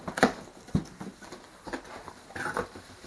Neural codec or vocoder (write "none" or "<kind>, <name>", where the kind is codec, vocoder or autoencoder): none